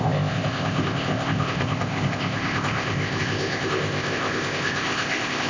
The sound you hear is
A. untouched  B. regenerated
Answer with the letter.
B